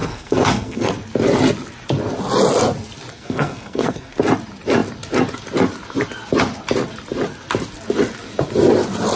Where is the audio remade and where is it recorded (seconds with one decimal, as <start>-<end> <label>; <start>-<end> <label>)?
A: 0.0-0.9 remade; 0.9-3.1 recorded; 3.1-4.2 remade; 4.2-9.2 recorded